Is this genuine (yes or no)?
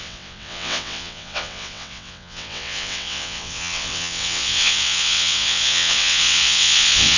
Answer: no